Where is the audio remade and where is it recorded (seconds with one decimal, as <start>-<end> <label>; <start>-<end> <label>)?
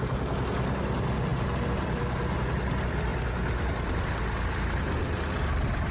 0.0-5.9 recorded